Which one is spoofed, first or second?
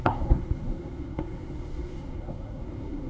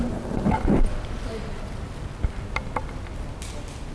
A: first